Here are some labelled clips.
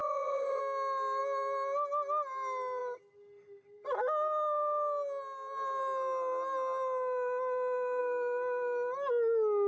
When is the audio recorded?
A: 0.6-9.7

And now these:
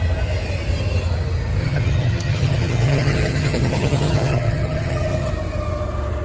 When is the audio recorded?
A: 0.0-1.6; 5.3-6.2

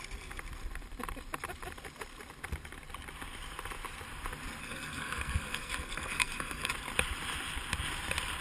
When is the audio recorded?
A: 0.0-4.6; 6.7-8.4

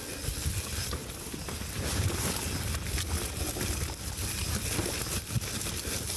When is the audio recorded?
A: 0.0-6.2

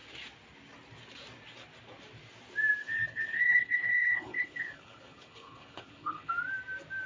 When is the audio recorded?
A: 0.0-2.8; 6.3-7.1

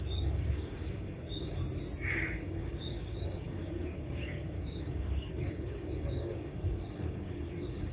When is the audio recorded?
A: 1.6-2.1